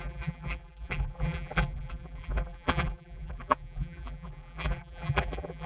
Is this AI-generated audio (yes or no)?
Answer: yes